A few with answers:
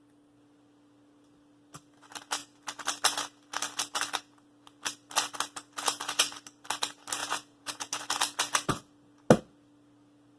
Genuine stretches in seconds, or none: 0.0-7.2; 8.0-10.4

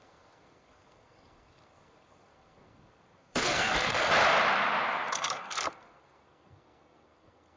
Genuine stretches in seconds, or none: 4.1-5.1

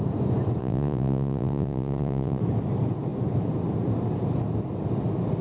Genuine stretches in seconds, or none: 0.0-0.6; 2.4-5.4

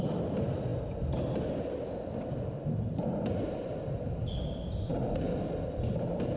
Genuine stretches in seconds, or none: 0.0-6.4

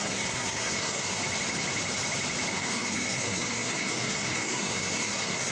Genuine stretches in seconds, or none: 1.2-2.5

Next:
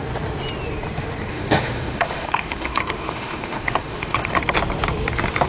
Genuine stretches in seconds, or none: 0.0-1.3; 4.4-5.5

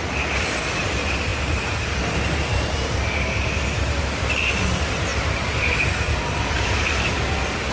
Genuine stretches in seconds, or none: 0.0-7.7

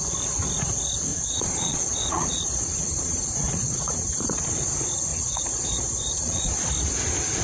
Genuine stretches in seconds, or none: 0.0-1.1; 4.5-5.1; 6.7-7.4